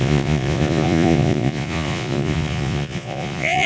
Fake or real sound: fake